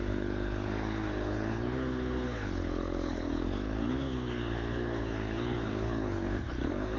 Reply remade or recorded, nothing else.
remade